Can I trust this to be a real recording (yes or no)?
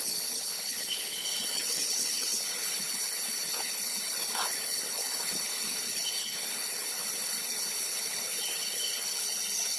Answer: no